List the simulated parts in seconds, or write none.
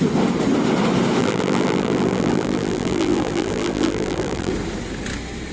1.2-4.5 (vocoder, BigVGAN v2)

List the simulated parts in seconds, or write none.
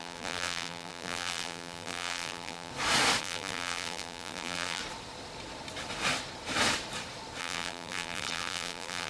0.0-2.7 (vocoder, BigVGAN v2); 3.2-4.8; 7.4-9.1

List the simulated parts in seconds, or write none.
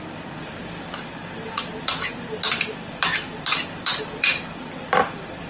0.0-2.1 (vocoder, BigVGAN v2); 3.9-5.5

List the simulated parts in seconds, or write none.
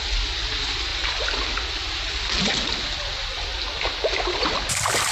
none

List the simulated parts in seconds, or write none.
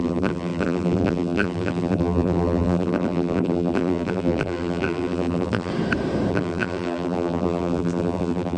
0.0-5.7 (vocoder, BigVGAN v2); 6.3-8.6